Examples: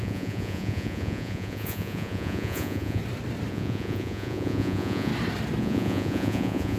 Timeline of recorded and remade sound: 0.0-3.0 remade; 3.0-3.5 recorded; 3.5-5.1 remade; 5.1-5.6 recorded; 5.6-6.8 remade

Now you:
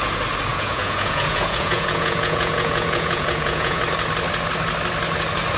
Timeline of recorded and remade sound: 0.0-0.5 recorded; 0.5-3.8 remade; 3.8-5.6 recorded

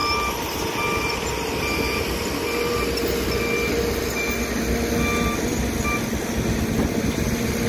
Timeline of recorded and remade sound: 0.0-7.7 recorded